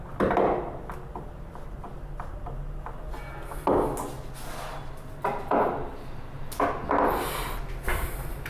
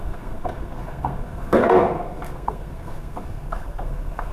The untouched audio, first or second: first